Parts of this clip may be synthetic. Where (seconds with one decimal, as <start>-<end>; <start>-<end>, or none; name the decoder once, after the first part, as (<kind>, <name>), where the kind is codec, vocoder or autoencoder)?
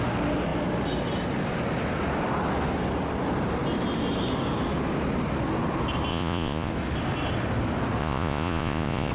6.1-6.7 (vocoder, Vocos); 8.0-9.1